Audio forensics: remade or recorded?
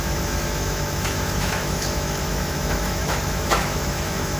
remade